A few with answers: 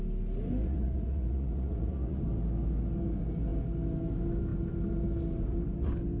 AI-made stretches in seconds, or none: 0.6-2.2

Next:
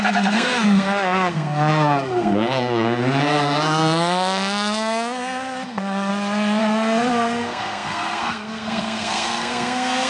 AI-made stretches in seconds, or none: 0.0-6.1; 6.6-10.1

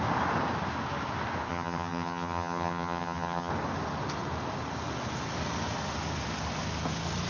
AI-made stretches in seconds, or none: 1.5-3.5

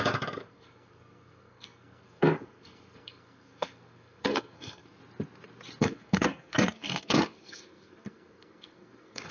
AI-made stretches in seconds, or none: 0.0-5.0; 5.8-9.3

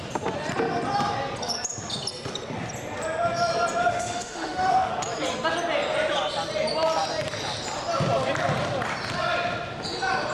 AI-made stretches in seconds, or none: 3.9-4.9

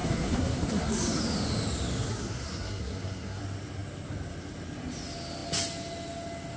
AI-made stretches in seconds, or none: 0.0-1.2; 2.1-3.4

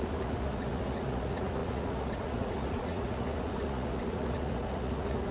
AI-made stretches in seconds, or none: 0.0-5.3